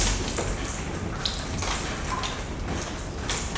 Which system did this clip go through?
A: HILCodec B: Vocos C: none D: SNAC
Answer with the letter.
C